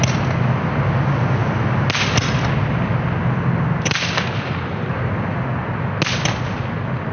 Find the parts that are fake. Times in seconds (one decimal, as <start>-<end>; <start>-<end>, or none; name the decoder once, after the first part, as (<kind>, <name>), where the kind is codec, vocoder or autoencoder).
none